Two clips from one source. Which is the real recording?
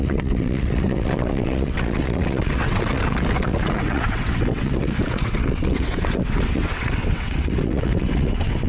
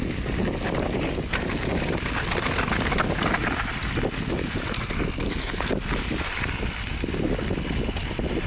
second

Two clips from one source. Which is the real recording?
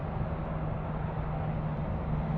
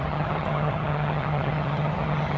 first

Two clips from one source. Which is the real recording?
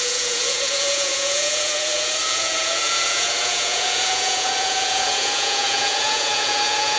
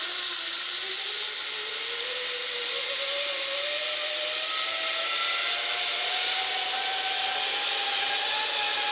second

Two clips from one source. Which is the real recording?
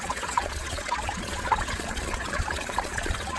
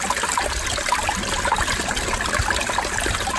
second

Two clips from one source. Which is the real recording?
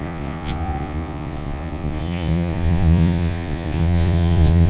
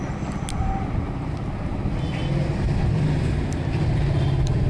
second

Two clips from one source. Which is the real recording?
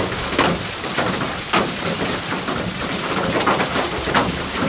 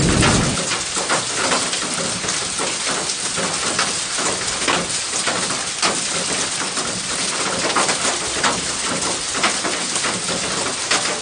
second